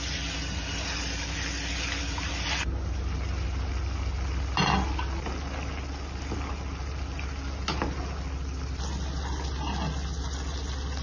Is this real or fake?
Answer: real